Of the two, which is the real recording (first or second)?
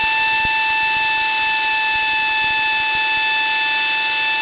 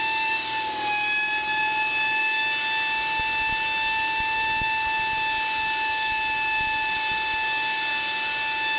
first